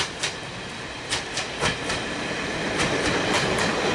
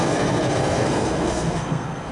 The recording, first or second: first